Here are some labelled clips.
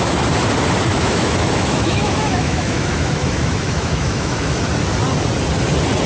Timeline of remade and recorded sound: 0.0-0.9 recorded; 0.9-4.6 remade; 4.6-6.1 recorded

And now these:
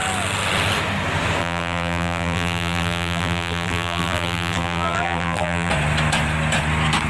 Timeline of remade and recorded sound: 0.0-1.4 recorded; 1.4-5.7 remade; 5.7-7.1 recorded